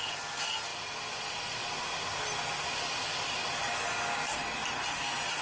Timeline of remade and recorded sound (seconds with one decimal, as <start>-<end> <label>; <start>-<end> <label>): 0.0-0.7 recorded; 0.7-3.9 remade; 3.9-4.6 recorded; 4.6-5.4 remade